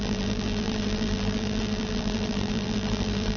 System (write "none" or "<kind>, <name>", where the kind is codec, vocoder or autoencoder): vocoder, BigVGAN v2